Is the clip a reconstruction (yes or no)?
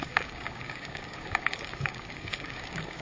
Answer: yes